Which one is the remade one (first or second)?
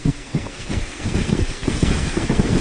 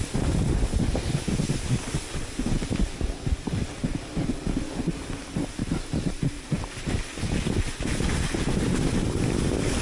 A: first